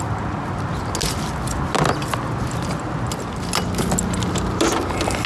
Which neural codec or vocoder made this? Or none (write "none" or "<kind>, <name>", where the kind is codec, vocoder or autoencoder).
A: none